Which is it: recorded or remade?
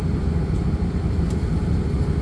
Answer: recorded